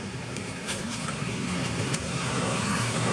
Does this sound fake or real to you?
fake